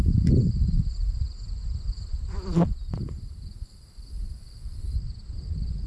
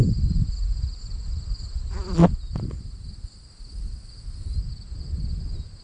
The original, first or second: second